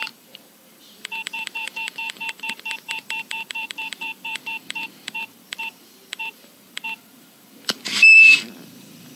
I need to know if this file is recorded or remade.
remade